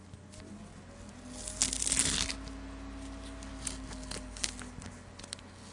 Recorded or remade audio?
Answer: recorded